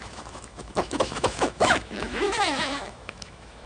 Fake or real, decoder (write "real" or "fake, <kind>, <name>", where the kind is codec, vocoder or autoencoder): fake, autoencoder, DAC-VAE